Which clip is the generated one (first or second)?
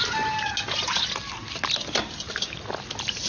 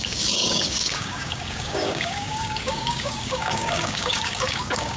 second